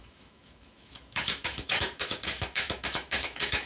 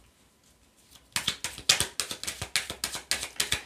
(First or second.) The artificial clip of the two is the first